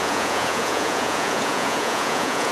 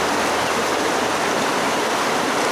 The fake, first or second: first